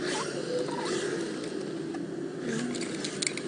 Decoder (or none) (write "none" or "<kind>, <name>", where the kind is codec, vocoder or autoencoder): none